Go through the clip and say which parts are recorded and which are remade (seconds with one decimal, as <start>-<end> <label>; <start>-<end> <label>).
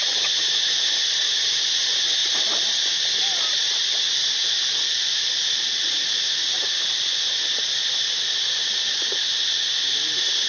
0.0-10.5 recorded